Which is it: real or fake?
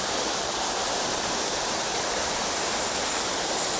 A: fake